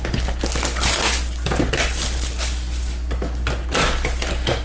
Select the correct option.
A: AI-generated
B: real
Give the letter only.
B